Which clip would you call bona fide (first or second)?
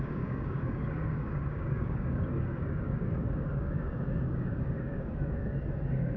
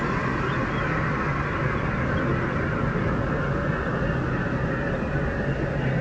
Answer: second